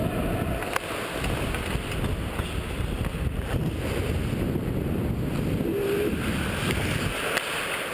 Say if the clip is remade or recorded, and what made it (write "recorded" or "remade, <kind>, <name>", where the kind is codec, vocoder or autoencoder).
recorded